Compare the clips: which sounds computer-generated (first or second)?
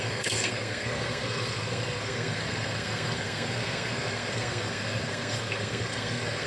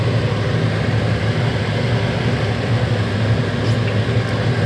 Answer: first